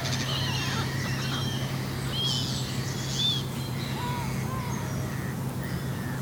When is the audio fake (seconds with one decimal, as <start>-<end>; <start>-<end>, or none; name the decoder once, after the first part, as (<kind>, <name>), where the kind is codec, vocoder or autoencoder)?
none